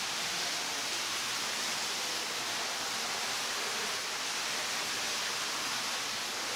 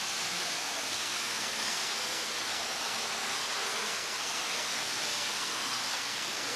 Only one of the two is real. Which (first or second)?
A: first